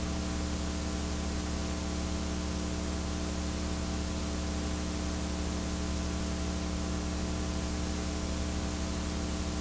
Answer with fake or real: real